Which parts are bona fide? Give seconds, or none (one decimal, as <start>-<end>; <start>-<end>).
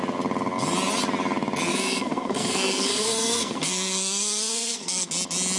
0.0-1.7; 5.1-5.6